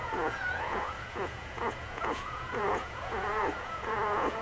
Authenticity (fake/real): fake